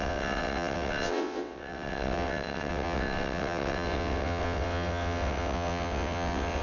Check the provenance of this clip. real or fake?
fake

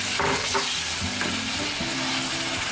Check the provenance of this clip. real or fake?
real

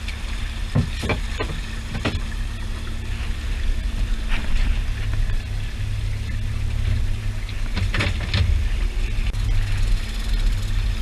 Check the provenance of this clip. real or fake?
real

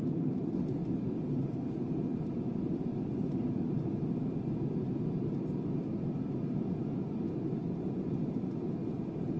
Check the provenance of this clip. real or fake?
real